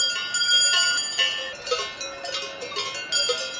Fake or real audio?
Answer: real